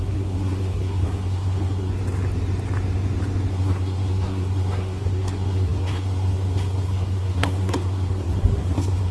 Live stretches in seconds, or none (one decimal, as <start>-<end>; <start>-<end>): 1.9-3.5

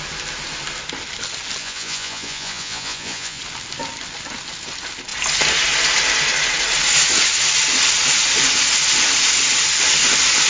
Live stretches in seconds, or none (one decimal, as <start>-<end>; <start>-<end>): 0.0-1.6; 3.4-10.5